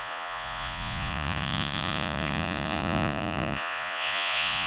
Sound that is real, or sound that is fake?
fake